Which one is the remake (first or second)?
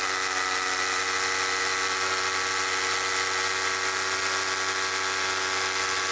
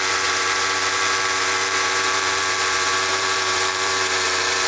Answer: second